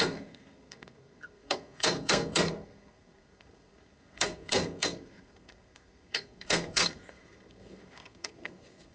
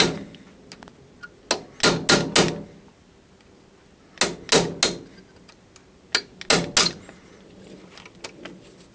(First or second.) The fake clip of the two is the first